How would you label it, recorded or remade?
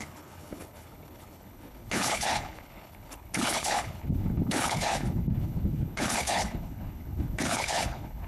remade